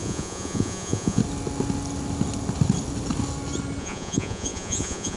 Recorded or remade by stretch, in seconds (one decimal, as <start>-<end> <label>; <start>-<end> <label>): 0.0-1.2 remade; 1.2-3.8 recorded; 3.8-5.2 remade